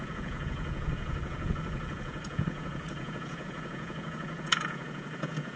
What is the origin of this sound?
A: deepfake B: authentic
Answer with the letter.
A